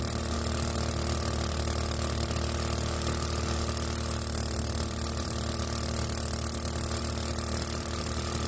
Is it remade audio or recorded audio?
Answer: remade